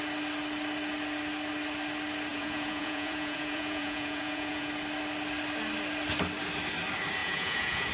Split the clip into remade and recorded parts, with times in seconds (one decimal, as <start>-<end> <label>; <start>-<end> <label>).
0.0-2.3 recorded; 2.3-4.7 remade; 4.7-7.2 recorded; 7.2-7.9 remade

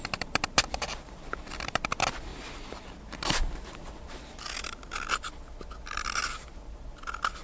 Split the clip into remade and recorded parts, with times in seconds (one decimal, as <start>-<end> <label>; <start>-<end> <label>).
0.0-7.4 recorded

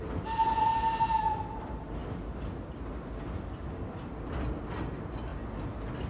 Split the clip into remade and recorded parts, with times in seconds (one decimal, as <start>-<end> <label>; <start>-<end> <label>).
0.0-6.1 recorded